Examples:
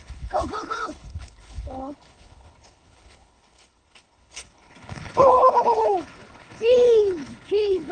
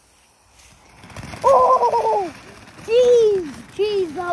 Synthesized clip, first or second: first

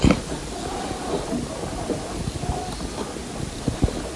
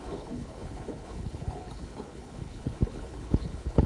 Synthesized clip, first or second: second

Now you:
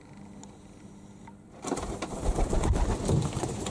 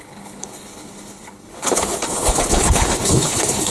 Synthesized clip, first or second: second